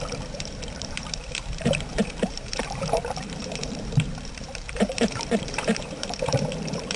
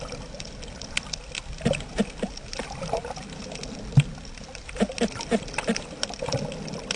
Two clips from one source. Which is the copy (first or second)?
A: first